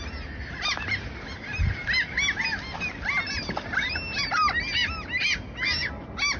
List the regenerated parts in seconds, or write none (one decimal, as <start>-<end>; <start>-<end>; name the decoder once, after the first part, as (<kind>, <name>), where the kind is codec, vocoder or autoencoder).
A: none